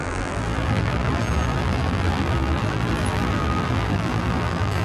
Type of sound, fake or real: fake